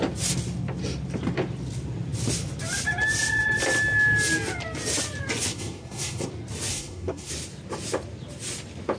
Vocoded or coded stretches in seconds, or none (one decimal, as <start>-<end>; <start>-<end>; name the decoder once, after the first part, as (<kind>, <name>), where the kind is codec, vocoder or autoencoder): 5.5-6.3 (codec, SNAC); 6.7-7.3